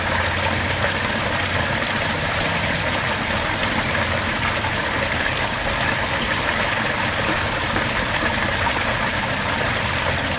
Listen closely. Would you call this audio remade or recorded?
recorded